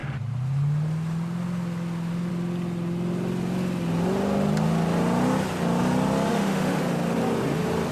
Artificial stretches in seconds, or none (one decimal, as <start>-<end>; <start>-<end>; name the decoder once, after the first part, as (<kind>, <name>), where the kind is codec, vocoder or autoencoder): 6.3-6.8 (autoencoder, DAC-VAE)

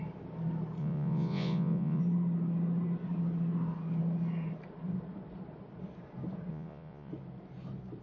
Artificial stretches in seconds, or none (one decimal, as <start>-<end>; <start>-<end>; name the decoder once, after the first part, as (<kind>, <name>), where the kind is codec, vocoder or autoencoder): 0.8-2.0 (vocoder, Vocos); 6.5-7.1

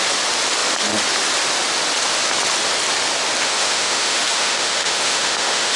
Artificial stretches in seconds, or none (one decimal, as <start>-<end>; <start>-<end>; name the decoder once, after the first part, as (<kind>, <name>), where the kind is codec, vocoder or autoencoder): 3.4-5.8 (autoencoder, DAC-VAE)

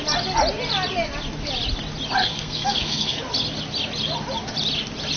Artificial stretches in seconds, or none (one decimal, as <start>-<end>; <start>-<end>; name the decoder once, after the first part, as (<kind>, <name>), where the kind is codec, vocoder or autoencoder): 2.2-3.2 (codec, SNAC)